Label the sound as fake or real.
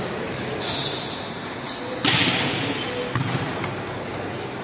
real